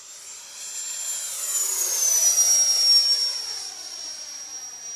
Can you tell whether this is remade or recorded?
recorded